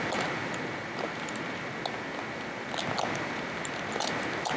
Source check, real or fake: real